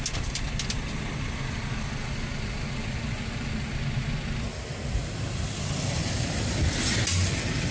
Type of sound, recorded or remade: recorded